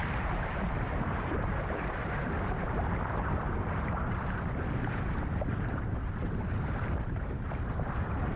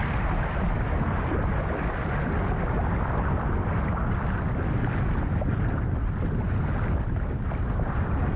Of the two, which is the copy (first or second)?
first